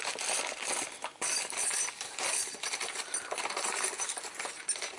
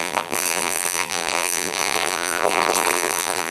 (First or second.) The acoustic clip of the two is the first